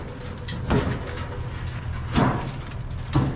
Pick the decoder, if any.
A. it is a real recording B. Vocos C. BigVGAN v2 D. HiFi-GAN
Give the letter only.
A